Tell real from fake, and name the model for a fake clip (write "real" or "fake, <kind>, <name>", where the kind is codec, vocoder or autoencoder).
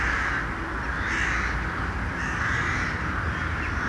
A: real